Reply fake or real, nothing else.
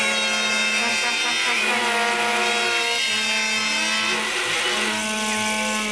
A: real